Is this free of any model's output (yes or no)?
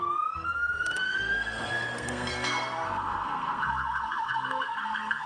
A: no